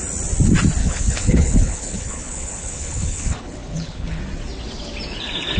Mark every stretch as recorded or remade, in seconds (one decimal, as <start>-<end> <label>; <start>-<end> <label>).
0.0-0.8 recorded; 0.8-4.2 remade; 4.2-5.6 recorded